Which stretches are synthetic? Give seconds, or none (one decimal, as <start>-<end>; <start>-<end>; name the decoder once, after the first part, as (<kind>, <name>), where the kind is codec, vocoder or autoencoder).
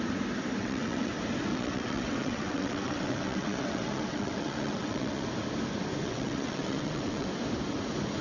0.6-1.1 (vocoder, WaveNeXt); 1.5-5.3; 6.0-7.3